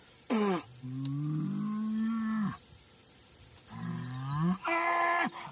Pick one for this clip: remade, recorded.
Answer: recorded